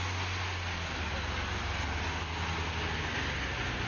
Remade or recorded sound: recorded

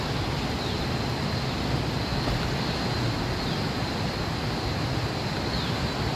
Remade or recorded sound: recorded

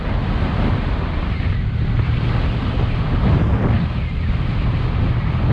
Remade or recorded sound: recorded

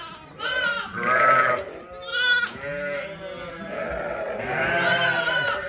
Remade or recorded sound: recorded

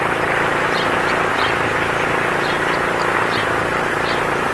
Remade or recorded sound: recorded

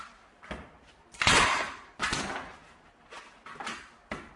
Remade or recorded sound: recorded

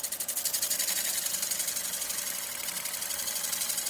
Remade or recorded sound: recorded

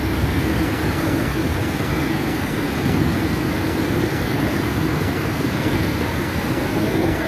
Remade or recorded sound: remade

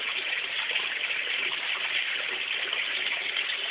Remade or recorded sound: recorded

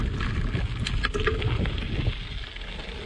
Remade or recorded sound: recorded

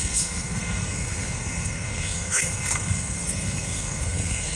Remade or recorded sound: remade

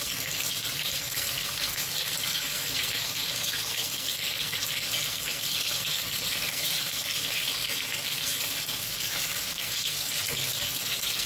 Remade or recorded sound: remade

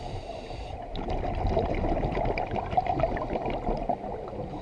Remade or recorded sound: recorded